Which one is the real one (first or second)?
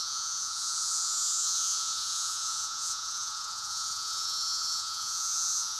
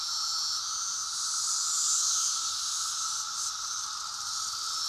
second